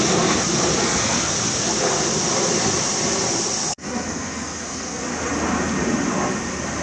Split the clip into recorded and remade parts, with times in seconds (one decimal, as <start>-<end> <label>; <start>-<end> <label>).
0.0-0.8 recorded; 0.8-1.3 remade; 1.3-3.7 recorded; 3.7-5.0 remade; 5.0-6.8 recorded